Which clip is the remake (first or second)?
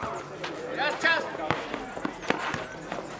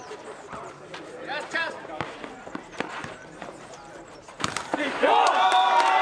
second